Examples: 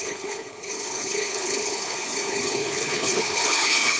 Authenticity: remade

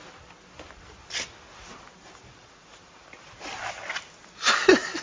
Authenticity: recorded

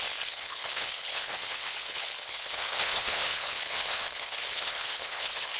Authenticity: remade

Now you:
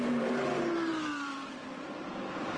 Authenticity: remade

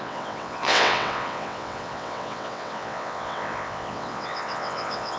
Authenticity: remade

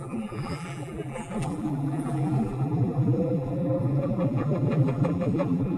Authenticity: remade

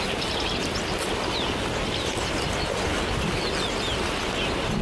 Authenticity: recorded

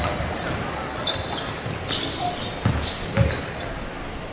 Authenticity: recorded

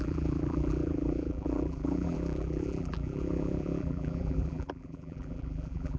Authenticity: remade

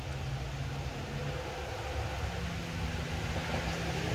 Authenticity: recorded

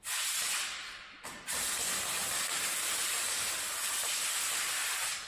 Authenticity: recorded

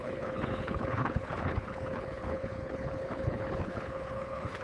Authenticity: remade